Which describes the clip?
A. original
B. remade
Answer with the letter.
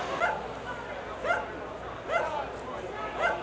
A